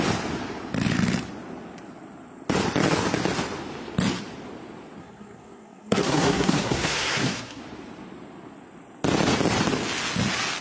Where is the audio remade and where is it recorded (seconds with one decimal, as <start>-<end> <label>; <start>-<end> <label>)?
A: 0.0-5.0 recorded; 5.0-7.6 remade; 7.6-10.6 recorded